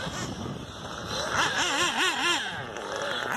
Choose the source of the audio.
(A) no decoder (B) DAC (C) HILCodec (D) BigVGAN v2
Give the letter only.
A